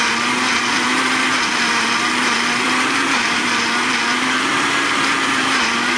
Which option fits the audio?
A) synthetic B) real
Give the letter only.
A